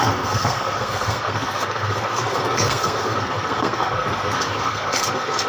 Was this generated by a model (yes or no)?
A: yes